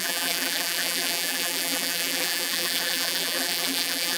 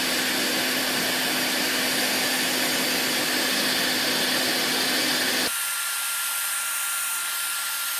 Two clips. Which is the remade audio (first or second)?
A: first